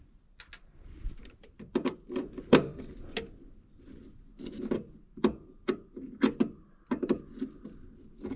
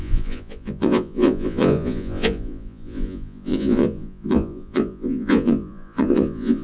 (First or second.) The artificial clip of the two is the second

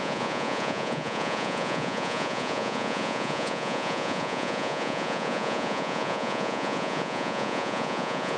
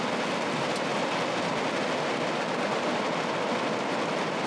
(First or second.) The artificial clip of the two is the first